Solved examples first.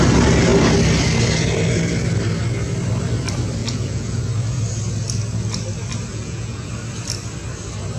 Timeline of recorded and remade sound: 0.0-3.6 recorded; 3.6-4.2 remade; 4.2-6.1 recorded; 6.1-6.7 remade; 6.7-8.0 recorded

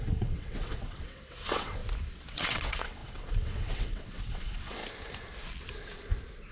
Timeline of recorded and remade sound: 0.0-1.8 remade; 1.8-2.3 recorded; 2.3-4.8 remade; 4.8-6.5 recorded

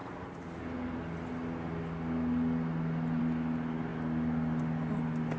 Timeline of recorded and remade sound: 0.0-5.4 recorded

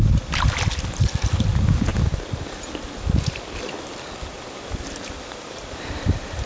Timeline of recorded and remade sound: 0.0-6.5 recorded

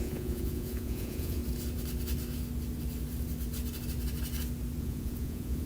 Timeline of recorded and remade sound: 0.0-1.4 remade; 1.4-4.8 recorded; 4.8-5.6 remade

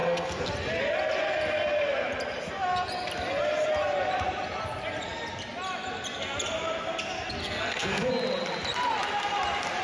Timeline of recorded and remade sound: 0.0-0.5 remade; 0.5-7.4 recorded; 7.4-8.1 remade; 8.1-9.8 recorded